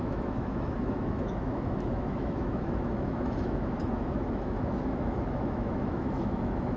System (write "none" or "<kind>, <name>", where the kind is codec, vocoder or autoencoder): autoencoder, DAC-VAE